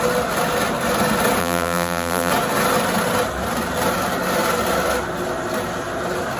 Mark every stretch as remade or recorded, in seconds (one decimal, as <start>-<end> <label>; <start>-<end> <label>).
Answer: 0.0-1.4 recorded; 1.4-2.3 remade; 2.3-6.4 recorded